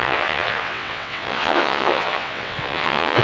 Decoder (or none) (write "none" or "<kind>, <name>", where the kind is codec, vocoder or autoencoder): vocoder, WaveNeXt